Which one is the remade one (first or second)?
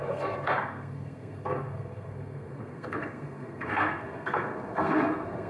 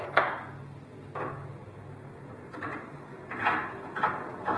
first